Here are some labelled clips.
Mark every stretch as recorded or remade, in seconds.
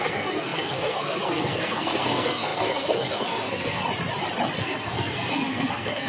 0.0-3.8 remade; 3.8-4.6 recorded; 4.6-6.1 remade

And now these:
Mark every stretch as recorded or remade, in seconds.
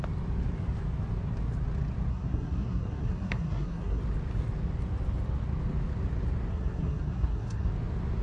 0.0-2.1 recorded; 2.1-4.0 remade; 4.0-6.5 recorded; 6.5-7.7 remade; 7.7-8.2 recorded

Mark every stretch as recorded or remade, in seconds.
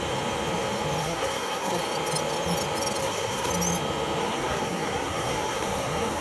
0.0-1.0 recorded; 1.0-1.8 remade; 1.8-3.0 recorded; 3.0-3.5 remade; 3.5-4.2 recorded; 4.2-6.2 remade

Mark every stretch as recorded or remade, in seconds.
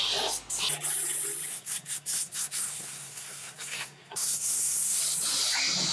0.0-1.5 recorded; 1.5-5.0 remade; 5.0-5.9 recorded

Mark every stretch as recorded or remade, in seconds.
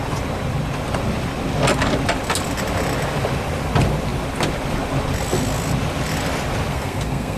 0.0-6.7 recorded; 6.7-7.4 remade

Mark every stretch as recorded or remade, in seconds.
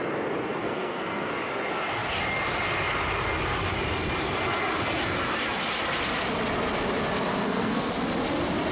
0.0-0.6 recorded; 0.6-1.3 remade; 1.3-7.4 recorded; 7.4-7.9 remade; 7.9-8.7 recorded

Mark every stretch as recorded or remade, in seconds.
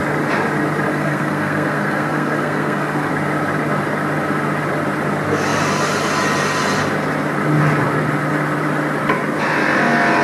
0.0-0.9 recorded; 0.9-3.1 remade; 3.1-10.2 recorded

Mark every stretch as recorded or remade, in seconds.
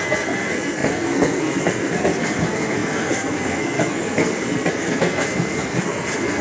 0.0-6.4 remade